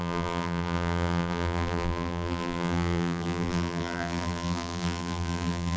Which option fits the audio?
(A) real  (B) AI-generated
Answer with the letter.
B